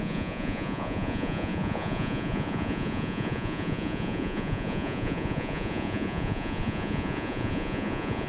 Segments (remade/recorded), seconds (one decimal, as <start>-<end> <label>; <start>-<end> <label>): 0.0-8.3 remade